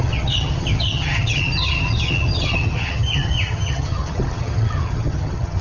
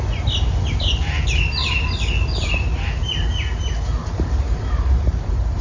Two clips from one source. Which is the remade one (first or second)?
first